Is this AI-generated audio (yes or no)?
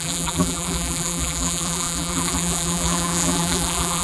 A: yes